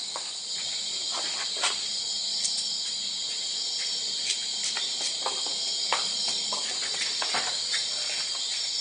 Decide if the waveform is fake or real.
real